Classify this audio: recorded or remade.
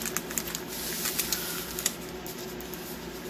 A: recorded